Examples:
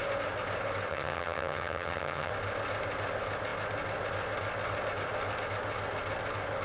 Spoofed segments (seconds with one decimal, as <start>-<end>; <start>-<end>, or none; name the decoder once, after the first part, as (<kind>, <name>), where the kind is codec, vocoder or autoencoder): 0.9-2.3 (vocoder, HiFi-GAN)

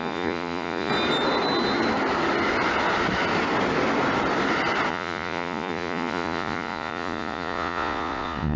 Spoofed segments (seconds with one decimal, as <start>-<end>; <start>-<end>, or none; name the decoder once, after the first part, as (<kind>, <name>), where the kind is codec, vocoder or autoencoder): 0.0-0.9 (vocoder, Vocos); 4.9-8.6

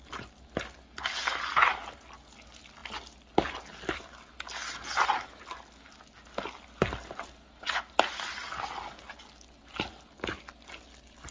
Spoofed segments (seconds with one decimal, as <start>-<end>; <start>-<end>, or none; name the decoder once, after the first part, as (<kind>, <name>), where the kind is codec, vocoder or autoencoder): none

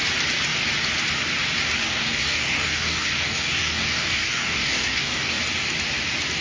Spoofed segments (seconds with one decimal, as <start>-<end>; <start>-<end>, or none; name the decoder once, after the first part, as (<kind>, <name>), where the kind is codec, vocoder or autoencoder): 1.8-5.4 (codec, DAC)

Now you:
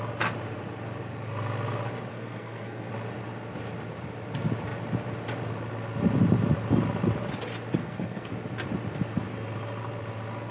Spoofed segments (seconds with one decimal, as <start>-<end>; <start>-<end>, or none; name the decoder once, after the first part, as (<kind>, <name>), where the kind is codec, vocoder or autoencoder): 2.1-2.9 (codec, SNAC); 7.8-8.3